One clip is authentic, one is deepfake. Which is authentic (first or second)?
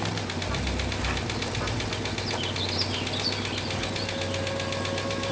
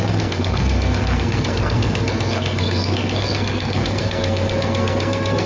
first